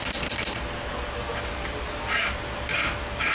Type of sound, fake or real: real